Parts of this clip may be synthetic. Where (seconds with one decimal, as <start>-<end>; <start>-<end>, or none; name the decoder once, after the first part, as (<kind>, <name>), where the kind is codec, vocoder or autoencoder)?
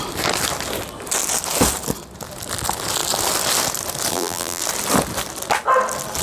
4.1-4.6 (vocoder, BigVGAN v2)